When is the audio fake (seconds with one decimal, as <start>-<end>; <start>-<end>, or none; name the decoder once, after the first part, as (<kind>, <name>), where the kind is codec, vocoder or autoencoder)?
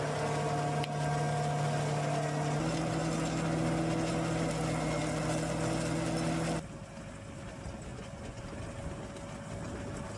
7.9-8.4 (vocoder, Vocos)